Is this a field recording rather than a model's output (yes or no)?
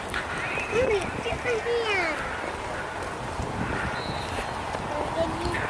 yes